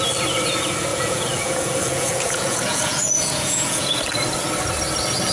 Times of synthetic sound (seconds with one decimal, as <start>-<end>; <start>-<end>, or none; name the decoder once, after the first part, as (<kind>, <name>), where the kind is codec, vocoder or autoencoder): 0.9-4.0 (vocoder, Vocos)